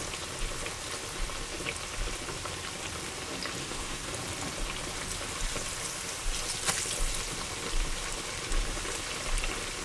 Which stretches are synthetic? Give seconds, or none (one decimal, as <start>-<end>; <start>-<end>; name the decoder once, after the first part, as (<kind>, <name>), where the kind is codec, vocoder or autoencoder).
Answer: 3.6-4.1 (codec, SNAC)